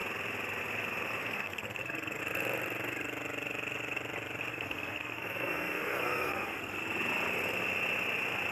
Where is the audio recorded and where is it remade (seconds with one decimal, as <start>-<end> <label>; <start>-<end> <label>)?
0.0-1.2 recorded; 1.2-2.2 remade; 2.2-4.5 recorded; 4.5-6.8 remade; 6.8-8.5 recorded